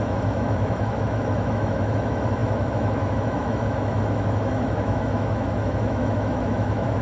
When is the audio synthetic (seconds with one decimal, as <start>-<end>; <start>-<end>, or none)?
0.0-7.0